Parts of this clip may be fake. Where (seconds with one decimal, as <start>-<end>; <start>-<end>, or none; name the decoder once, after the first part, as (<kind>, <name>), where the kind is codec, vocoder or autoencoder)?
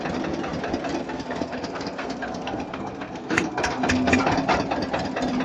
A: 1.0-4.2 (codec, SNAC)